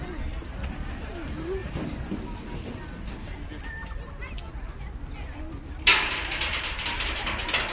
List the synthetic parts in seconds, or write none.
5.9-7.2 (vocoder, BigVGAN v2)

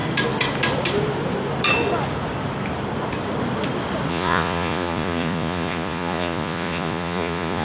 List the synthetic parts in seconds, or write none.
4.1-7.6 (vocoder, Vocos)

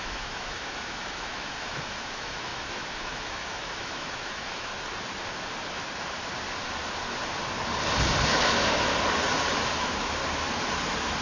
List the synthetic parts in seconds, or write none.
0.0-4.7 (autoencoder, DAC-VAE); 8.3-8.9; 9.5-10.2

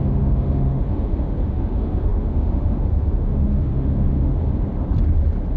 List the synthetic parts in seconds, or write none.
0.0-4.4 (autoencoder, DAC-VAE)

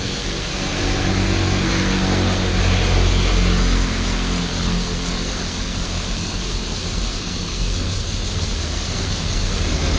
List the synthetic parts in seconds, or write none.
0.0-2.5 (codec, SNAC); 3.6-10.0